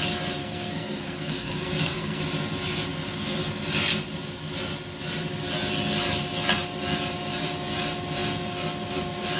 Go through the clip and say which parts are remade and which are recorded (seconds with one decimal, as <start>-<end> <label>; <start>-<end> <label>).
0.0-0.4 recorded; 0.4-2.2 remade; 2.2-9.4 recorded